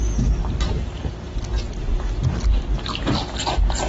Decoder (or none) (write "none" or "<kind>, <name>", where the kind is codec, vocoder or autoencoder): none